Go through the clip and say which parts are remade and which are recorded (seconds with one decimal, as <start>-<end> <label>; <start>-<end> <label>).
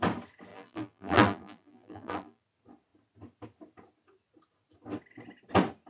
0.0-0.5 recorded; 0.5-2.4 remade; 2.4-5.9 recorded